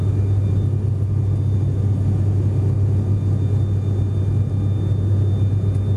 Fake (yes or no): no